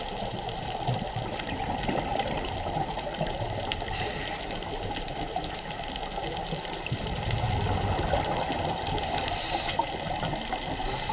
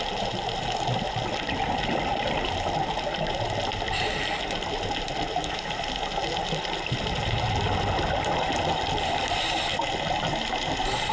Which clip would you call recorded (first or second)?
second